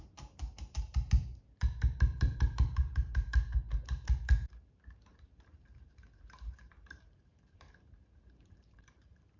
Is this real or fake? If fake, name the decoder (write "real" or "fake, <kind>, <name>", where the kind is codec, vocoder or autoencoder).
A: fake, vocoder, BigVGAN v2